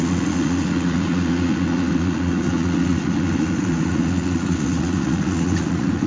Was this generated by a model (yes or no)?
yes